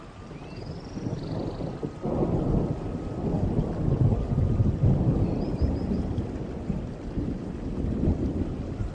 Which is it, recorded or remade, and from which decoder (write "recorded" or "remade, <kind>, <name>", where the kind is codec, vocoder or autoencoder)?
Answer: recorded